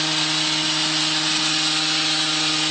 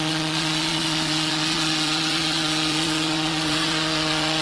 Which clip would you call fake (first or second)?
second